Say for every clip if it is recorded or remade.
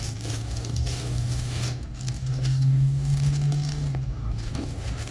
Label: remade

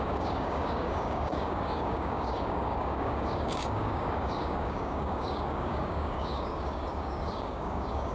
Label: remade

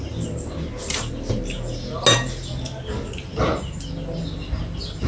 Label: recorded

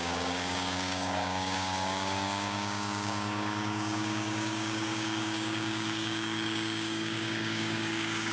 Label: remade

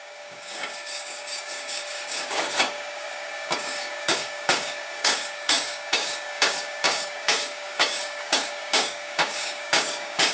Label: remade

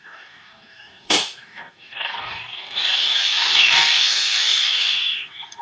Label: remade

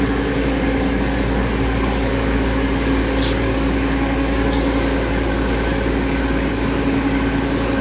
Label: remade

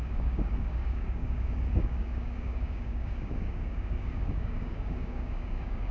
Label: remade